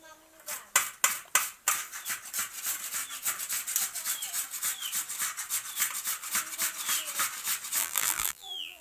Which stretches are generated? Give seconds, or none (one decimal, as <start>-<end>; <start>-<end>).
7.8-8.8

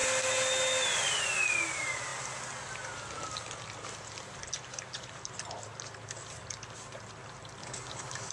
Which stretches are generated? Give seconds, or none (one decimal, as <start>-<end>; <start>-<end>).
7.6-8.3

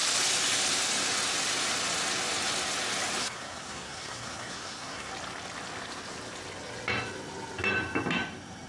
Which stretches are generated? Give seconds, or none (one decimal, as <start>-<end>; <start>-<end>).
3.2-5.1

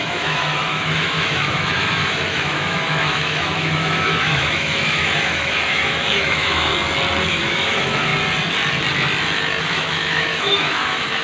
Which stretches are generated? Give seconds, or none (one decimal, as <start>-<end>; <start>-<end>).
0.0-6.7; 7.3-8.1; 9.6-11.2

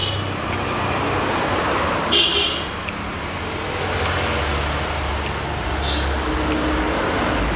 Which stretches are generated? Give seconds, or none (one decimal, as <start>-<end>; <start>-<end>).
0.0-1.2

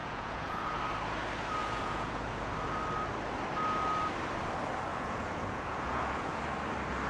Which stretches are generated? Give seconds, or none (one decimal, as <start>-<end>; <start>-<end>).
0.0-0.8; 1.6-2.5; 4.9-6.4